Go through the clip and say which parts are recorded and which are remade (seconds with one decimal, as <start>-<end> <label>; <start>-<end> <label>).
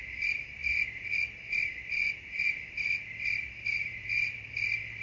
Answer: 0.0-3.7 recorded; 3.7-4.5 remade; 4.5-5.0 recorded